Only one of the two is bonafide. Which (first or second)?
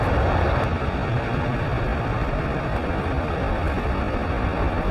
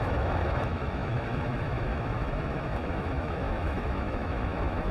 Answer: first